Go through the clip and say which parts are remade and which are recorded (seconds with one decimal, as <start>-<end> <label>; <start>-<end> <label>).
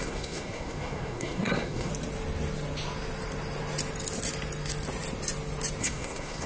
0.0-1.9 remade; 1.9-5.8 recorded; 5.8-6.5 remade